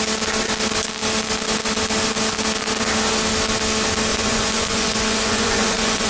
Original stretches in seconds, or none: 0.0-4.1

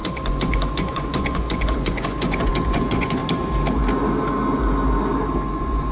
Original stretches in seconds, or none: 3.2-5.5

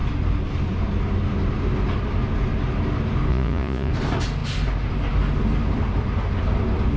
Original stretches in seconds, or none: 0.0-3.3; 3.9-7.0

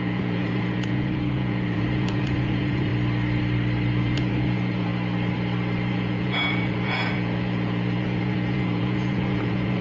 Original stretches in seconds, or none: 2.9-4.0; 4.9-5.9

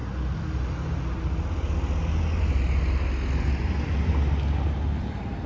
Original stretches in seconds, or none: 0.0-5.5

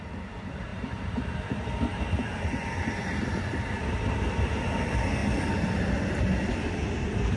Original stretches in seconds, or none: 0.0-7.4